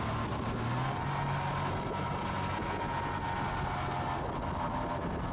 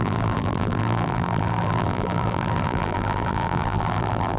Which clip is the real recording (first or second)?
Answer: first